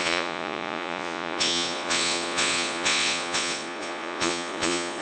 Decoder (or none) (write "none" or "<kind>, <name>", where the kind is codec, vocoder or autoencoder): vocoder, Vocos